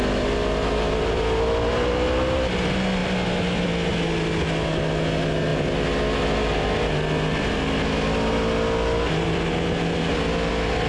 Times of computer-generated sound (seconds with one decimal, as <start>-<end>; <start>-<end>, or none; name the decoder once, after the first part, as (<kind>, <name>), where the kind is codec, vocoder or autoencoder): none